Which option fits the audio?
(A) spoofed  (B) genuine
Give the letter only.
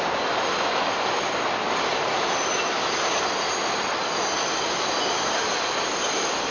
B